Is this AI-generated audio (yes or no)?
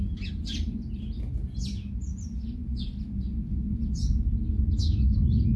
no